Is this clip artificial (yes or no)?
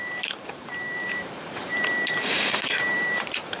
yes